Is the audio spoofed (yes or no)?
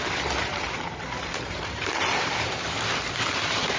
yes